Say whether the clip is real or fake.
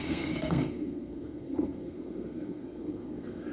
fake